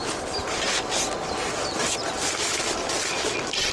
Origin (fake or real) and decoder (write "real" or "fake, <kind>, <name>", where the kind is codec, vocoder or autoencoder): real